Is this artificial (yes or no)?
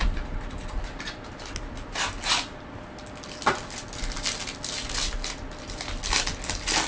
no